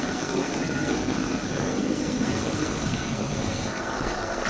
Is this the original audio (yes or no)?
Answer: no